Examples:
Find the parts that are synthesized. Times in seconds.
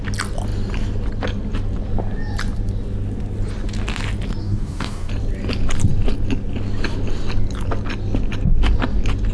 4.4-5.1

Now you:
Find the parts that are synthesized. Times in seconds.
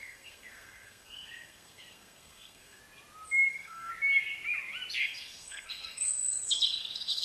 0.0-2.8; 3.5-3.9; 5.0-7.2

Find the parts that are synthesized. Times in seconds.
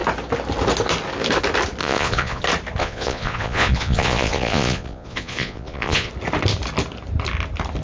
1.8-2.4; 2.8-6.1